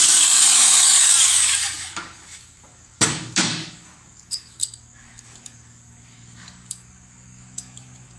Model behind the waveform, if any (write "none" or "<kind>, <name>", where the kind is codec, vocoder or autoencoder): codec, DAC